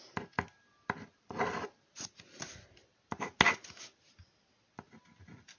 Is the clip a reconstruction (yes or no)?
no